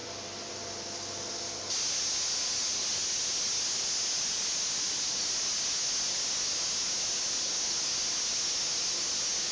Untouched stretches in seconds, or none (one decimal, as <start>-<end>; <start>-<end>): 0.0-9.5

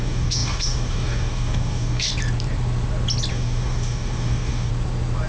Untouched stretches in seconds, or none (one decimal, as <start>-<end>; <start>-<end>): 2.1-3.3; 4.7-5.3

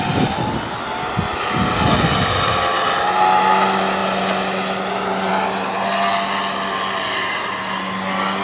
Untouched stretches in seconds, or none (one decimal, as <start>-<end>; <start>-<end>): 0.0-8.4

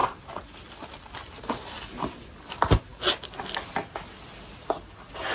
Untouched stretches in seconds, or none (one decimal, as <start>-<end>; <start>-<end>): 0.0-5.3